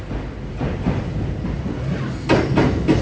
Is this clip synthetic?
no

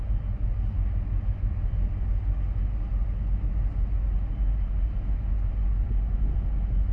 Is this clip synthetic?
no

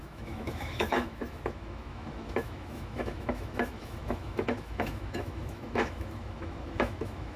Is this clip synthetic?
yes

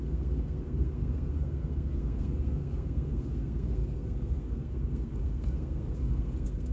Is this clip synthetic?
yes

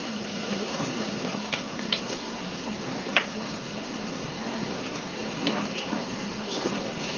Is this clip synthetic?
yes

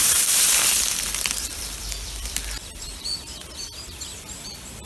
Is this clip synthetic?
yes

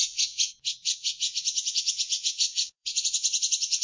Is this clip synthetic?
yes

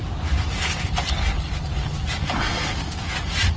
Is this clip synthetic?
no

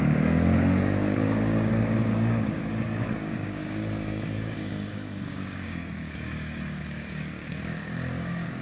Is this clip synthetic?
yes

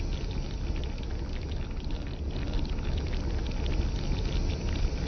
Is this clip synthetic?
no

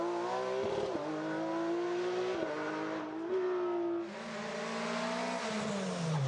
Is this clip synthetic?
no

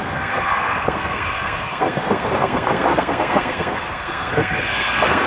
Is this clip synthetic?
yes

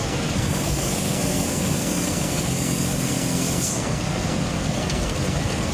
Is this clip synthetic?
yes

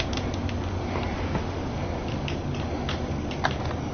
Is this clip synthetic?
no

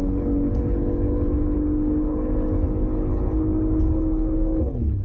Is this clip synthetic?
yes